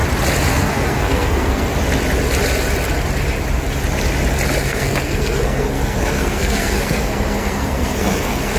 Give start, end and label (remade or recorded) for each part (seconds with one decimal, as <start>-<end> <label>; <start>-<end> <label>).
0.0-0.5 recorded; 0.5-1.7 remade; 1.7-4.6 recorded; 4.6-8.6 remade